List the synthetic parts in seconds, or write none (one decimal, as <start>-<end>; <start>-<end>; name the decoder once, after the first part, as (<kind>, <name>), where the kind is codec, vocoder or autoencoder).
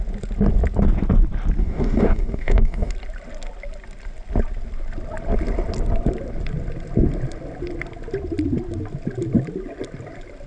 1.6-2.9 (codec, DAC)